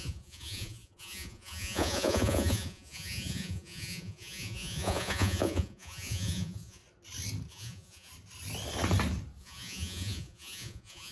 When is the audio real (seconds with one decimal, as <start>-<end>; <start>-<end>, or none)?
6.8-7.5; 8.1-9.4